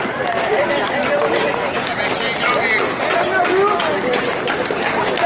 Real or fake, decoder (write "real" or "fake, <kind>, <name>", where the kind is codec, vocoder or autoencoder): real